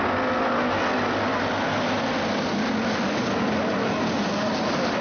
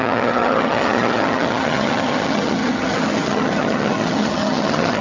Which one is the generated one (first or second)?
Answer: second